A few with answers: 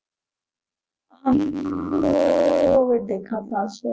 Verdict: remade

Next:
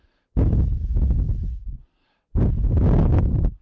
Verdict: recorded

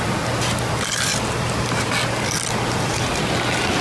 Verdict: recorded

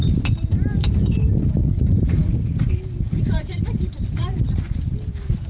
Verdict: remade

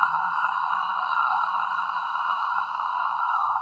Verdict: remade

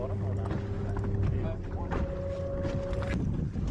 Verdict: recorded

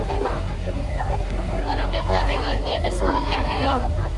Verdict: remade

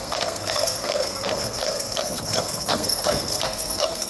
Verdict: remade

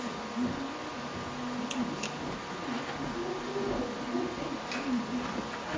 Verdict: recorded